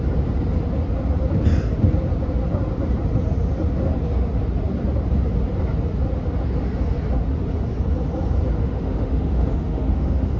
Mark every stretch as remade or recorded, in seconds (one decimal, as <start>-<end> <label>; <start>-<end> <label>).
0.0-8.6 recorded; 8.6-10.4 remade

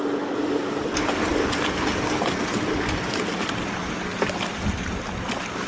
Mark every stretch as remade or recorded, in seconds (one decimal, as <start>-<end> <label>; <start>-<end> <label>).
0.0-5.7 recorded

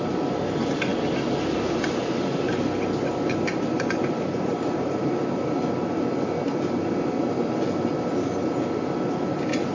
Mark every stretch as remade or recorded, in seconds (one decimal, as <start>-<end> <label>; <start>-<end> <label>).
0.0-3.5 recorded; 3.5-5.5 remade; 5.5-9.7 recorded

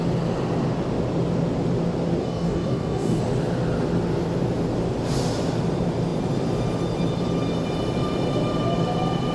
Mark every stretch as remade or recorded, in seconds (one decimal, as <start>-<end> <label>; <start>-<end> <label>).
0.0-2.2 recorded; 2.2-3.2 remade; 3.2-9.3 recorded

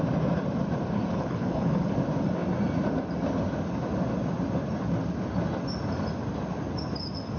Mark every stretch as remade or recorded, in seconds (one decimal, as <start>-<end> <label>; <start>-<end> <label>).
0.0-1.1 recorded; 1.1-1.9 remade; 1.9-7.4 recorded

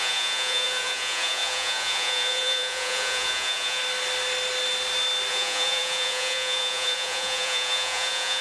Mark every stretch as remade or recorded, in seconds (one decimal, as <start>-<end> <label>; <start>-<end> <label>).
0.0-3.8 remade; 3.8-5.3 recorded; 5.3-8.4 remade

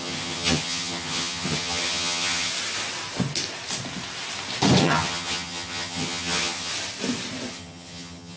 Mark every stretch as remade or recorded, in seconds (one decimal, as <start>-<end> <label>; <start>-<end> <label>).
0.0-2.5 remade; 2.5-4.8 recorded; 4.8-6.7 remade; 6.7-7.5 recorded; 7.5-8.4 remade

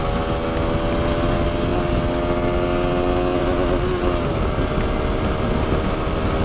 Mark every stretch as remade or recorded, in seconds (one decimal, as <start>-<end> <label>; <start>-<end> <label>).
0.0-6.4 recorded